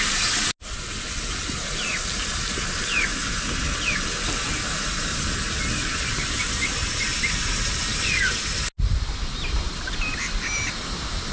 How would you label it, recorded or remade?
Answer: recorded